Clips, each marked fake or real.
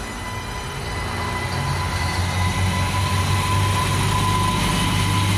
real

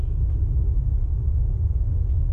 real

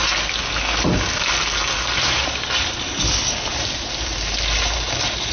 real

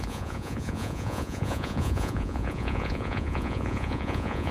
fake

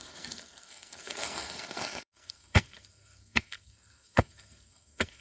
fake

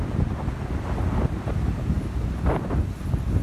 real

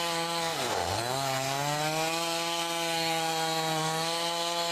fake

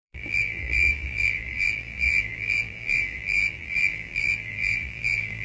fake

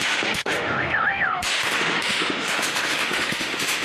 fake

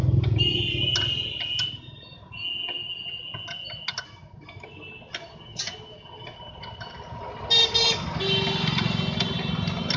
real